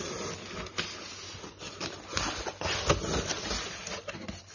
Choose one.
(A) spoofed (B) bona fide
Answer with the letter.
B